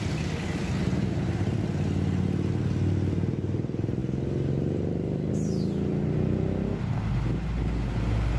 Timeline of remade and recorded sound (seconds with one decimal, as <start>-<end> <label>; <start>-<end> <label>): 0.0-8.4 recorded

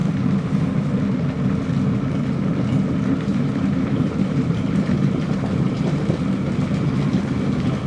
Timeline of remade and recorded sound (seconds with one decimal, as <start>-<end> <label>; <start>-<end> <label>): 0.0-3.3 recorded; 3.3-6.5 remade; 6.5-7.9 recorded

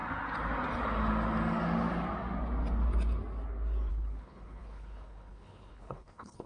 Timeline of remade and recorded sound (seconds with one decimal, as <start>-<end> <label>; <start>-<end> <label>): 0.0-3.9 recorded; 3.9-6.5 remade

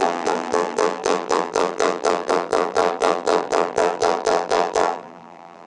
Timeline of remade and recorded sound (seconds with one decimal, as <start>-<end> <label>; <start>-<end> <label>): 0.0-5.7 remade

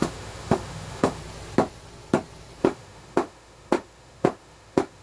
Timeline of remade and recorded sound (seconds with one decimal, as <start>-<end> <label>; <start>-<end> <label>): 0.0-1.2 remade; 1.2-2.6 recorded; 2.6-5.0 remade

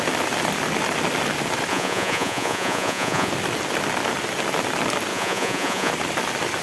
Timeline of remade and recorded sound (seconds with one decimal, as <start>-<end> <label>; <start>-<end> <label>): 0.0-1.7 recorded; 1.7-3.3 remade; 3.3-5.1 recorded; 5.1-5.9 remade; 5.9-6.6 recorded

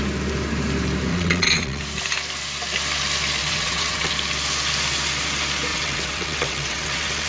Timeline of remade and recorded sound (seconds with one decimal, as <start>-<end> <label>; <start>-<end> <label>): 0.0-1.1 recorded; 1.1-1.8 remade; 1.8-3.4 recorded; 3.4-4.1 remade; 4.1-5.7 recorded; 5.7-7.3 remade